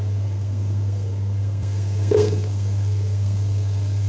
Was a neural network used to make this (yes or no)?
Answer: yes